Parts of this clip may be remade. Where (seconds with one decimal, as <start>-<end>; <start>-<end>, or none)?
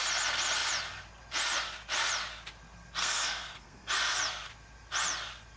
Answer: 3.0-3.9